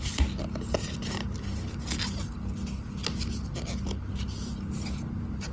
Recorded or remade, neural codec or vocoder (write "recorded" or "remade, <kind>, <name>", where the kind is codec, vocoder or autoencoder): recorded